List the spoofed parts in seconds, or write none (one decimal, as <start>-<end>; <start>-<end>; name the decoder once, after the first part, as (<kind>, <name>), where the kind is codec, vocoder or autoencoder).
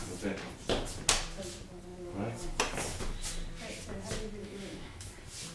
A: 4.4-5.1 (autoencoder, DAC-VAE)